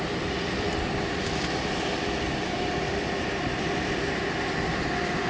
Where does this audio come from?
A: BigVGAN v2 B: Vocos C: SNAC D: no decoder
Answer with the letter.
A